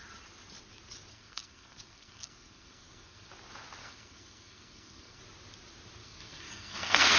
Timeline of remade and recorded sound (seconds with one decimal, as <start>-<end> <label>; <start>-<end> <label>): 0.0-1.1 recorded; 1.1-3.3 remade; 3.3-3.8 recorded; 3.8-5.2 remade; 5.2-6.0 recorded; 6.0-7.2 remade